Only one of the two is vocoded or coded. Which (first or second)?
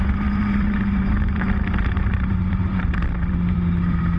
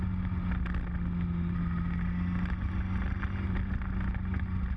first